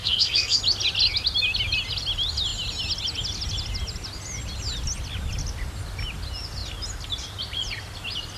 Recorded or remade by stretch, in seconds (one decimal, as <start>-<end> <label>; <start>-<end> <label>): 0.0-0.6 remade; 0.6-8.4 recorded